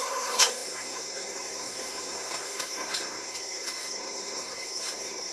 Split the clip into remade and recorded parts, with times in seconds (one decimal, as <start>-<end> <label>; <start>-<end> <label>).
0.0-5.3 remade

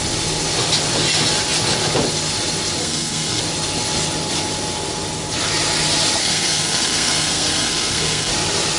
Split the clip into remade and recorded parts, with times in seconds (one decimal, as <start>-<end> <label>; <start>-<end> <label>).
0.0-2.8 recorded; 2.8-3.4 remade; 3.4-6.2 recorded; 6.2-8.3 remade; 8.3-8.8 recorded

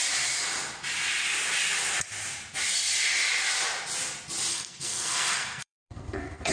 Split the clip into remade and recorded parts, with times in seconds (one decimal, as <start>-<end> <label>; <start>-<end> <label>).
0.0-4.5 recorded; 4.5-6.5 remade

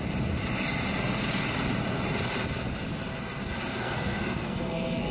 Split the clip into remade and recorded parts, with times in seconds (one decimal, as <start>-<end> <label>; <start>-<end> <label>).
0.0-3.7 recorded; 3.7-5.1 remade